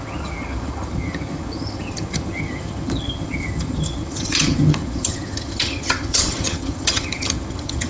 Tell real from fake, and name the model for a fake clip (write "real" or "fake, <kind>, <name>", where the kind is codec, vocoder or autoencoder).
fake, vocoder, HiFi-GAN